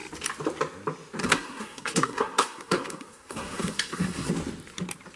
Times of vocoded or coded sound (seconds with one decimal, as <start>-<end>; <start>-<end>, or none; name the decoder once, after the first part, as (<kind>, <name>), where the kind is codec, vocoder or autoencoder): 1.2-4.3 (codec, SNAC)